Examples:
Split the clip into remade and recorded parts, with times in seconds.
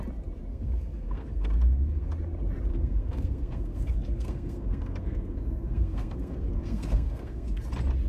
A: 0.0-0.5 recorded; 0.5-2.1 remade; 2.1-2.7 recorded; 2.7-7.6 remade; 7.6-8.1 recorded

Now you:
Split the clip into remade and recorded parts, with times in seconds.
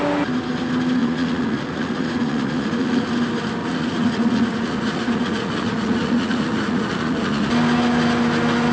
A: 0.0-1.0 recorded; 1.0-3.1 remade; 3.1-3.6 recorded; 3.6-7.5 remade; 7.5-8.7 recorded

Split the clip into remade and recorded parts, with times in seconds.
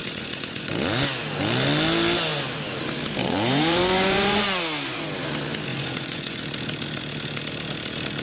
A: 0.0-0.7 remade; 0.7-3.2 recorded; 3.2-4.6 remade; 4.6-5.7 recorded; 5.7-6.4 remade; 6.4-8.2 recorded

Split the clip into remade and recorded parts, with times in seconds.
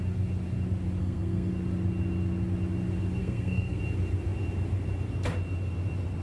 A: 0.0-1.0 recorded; 1.0-1.5 remade; 1.5-3.2 recorded; 3.2-3.8 remade; 3.8-6.2 recorded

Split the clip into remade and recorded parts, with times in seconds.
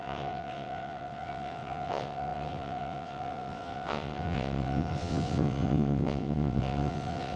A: 0.0-7.4 remade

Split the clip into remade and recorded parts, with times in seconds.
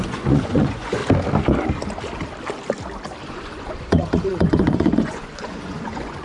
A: 0.0-1.0 remade; 1.0-3.2 recorded; 3.2-6.2 remade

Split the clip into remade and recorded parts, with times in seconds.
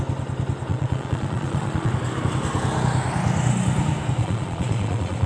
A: 0.0-0.7 recorded; 0.7-1.9 remade; 1.9-4.2 recorded; 4.2-5.3 remade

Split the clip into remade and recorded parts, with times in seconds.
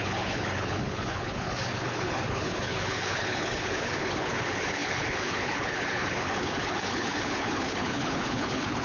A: 0.0-8.8 remade